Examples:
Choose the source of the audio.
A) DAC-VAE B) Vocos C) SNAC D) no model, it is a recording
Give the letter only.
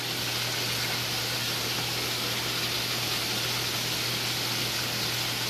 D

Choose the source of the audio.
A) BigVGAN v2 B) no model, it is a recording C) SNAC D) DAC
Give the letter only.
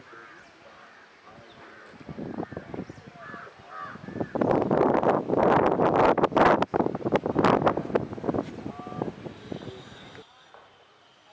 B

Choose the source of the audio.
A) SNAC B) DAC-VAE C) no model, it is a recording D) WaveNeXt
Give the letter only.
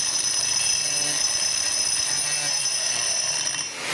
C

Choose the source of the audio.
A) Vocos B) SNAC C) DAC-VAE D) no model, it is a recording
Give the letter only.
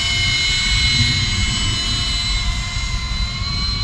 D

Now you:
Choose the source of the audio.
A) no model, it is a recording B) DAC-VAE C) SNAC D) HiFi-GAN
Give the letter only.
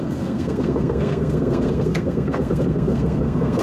C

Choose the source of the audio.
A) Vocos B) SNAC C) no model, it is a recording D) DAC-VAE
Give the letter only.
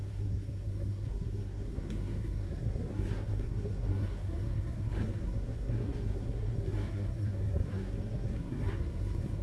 B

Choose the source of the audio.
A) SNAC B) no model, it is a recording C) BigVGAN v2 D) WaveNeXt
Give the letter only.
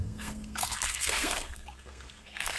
A